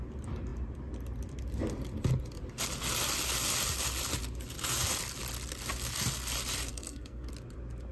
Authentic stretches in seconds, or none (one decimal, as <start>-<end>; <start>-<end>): 0.0-6.7; 7.3-7.9